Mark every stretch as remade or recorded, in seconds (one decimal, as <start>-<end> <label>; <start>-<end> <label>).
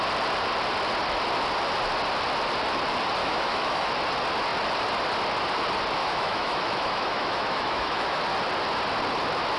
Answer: 0.0-3.2 recorded; 3.2-3.9 remade; 3.9-6.0 recorded; 6.0-8.2 remade; 8.2-9.6 recorded